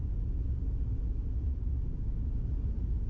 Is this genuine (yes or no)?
yes